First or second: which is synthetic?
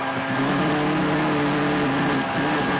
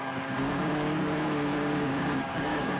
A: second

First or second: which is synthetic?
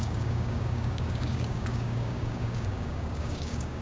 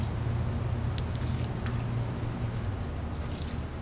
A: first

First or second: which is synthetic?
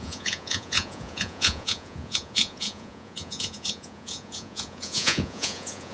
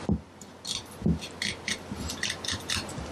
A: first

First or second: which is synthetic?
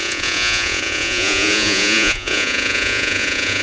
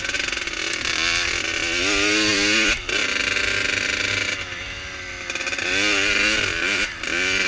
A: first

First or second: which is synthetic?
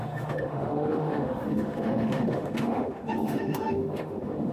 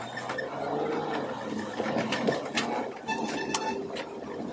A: first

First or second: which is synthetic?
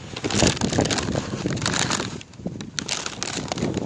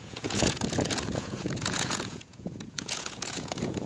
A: second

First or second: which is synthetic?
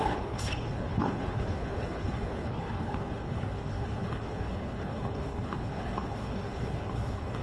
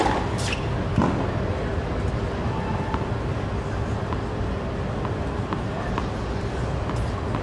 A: first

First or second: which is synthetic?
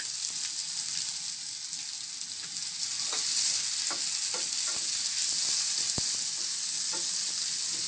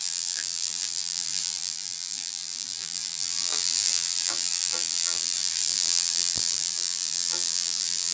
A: second